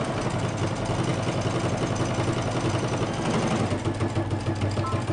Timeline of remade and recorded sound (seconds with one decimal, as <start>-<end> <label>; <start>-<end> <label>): 0.0-5.1 recorded